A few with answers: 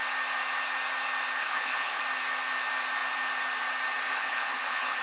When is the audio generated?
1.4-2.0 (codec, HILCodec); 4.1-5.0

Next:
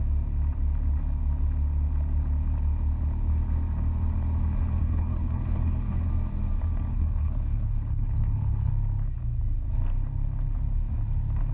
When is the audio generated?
4.8-6.1 (codec, HILCodec); 6.9-8.7

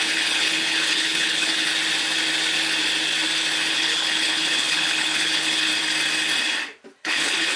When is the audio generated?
0.0-1.7 (codec, HILCodec); 3.7-5.7; 7.0-7.6

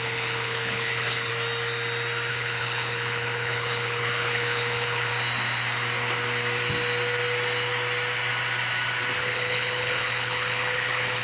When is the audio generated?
0.0-1.3 (codec, HILCodec); 2.3-5.1; 9.2-11.2